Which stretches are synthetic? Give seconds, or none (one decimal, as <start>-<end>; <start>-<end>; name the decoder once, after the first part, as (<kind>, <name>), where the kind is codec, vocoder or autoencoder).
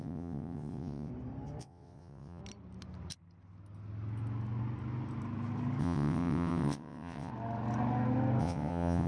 0.0-1.1 (vocoder, WaveNeXt); 1.6-2.4; 5.8-7.3; 8.4-9.1